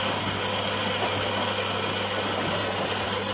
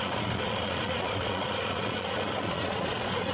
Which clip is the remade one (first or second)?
second